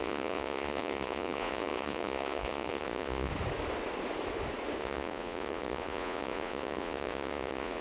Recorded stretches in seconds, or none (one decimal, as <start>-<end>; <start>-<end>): 3.3-4.8